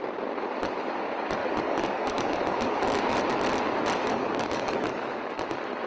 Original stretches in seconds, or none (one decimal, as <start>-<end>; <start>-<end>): 0.0-1.4; 3.0-4.1; 5.2-5.9